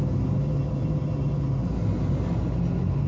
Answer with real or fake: real